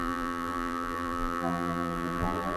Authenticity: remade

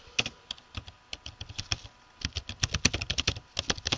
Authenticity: recorded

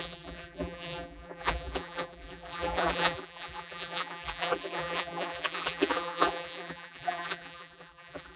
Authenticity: remade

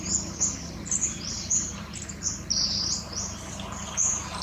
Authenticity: recorded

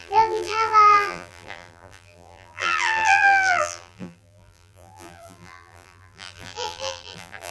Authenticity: remade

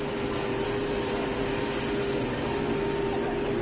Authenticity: recorded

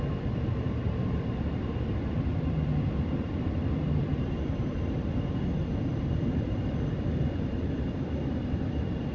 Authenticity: remade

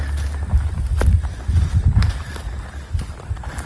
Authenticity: recorded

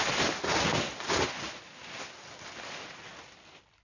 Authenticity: recorded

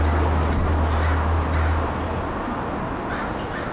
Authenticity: recorded